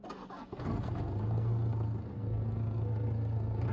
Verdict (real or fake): fake